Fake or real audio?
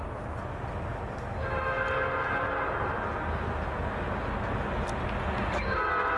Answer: real